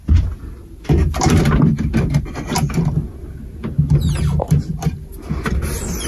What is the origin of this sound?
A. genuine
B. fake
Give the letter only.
A